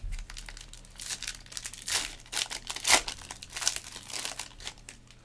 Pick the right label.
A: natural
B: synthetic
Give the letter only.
A